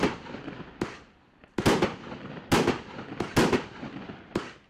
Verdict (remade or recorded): recorded